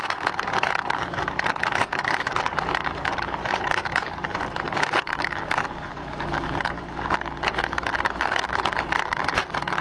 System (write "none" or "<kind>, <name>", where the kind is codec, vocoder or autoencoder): codec, DAC